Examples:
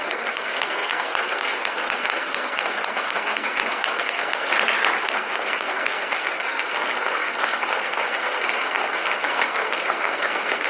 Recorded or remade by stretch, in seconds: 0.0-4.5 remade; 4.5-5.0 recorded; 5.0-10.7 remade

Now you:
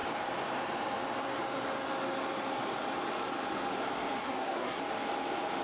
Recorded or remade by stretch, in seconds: 0.0-4.2 recorded; 4.2-4.8 remade; 4.8-5.6 recorded

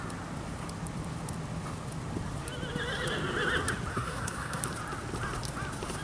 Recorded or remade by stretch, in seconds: 0.0-3.9 recorded; 3.9-4.6 remade; 4.6-6.0 recorded

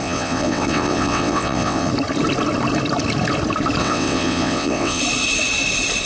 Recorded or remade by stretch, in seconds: 0.0-1.9 remade; 1.9-3.8 recorded; 3.8-5.0 remade; 5.0-6.1 recorded

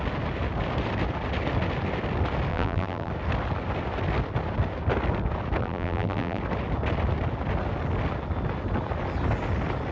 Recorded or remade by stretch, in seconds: 0.0-2.5 recorded; 2.5-3.1 remade; 3.1-5.6 recorded; 5.6-6.4 remade; 6.4-9.9 recorded

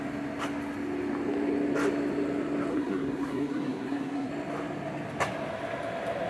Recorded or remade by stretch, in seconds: 0.0-2.7 recorded; 2.7-4.3 remade; 4.3-6.3 recorded